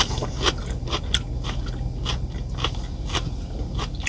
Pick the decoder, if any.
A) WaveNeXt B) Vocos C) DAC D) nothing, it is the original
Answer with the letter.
D